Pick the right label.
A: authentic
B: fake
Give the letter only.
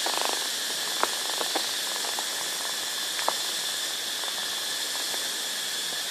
A